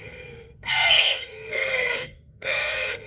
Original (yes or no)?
no